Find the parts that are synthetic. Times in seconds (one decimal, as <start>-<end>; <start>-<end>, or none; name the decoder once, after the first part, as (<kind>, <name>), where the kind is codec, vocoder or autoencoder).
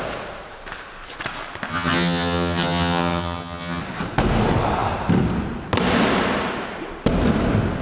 1.7-3.8 (vocoder, HiFi-GAN)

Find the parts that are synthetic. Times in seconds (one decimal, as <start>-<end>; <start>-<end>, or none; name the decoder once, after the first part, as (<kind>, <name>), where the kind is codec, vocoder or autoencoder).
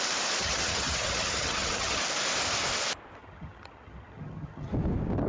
0.4-2.0 (vocoder, HiFi-GAN); 3.2-4.7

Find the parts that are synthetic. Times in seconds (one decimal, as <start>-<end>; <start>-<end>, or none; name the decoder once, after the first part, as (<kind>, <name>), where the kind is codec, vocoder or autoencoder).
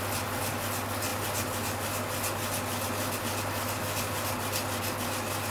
none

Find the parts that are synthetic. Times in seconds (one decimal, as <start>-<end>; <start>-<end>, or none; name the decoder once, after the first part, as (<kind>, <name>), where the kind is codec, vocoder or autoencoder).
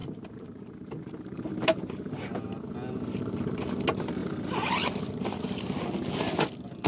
0.0-1.9 (vocoder, BigVGAN v2); 4.2-5.4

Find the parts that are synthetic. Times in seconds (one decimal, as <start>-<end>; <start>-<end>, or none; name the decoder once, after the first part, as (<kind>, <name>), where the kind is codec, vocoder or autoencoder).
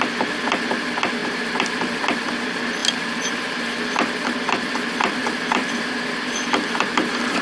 1.2-2.0 (vocoder, BigVGAN v2); 2.8-3.8; 5.2-7.4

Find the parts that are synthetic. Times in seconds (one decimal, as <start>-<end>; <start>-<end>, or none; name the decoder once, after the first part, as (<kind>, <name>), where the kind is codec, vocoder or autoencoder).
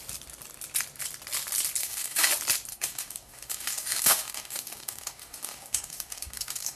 1.8-2.3 (codec, DAC); 2.7-6.8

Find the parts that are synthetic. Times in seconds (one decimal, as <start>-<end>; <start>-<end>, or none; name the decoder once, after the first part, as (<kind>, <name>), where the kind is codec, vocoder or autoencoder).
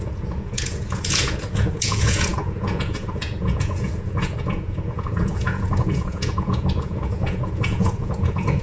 0.0-8.6 (vocoder, Vocos)